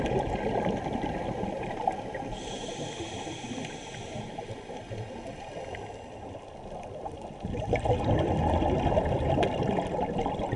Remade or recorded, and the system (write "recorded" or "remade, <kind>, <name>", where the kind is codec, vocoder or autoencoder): recorded